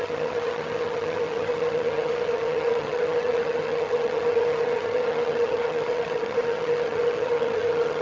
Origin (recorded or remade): remade